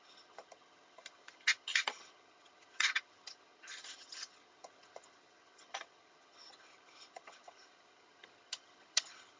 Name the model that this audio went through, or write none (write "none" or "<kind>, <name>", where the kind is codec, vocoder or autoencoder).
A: vocoder, HiFi-GAN